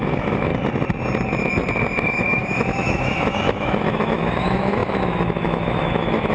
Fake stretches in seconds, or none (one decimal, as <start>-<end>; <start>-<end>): 0.0-0.5; 2.0-6.3